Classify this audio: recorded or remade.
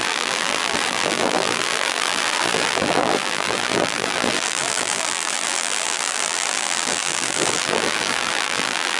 remade